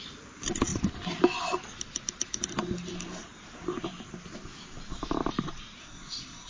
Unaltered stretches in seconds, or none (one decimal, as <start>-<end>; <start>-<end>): 0.0-5.8